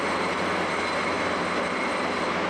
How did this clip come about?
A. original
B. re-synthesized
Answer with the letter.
A